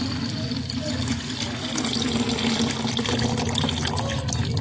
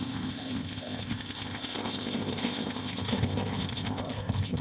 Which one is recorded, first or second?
first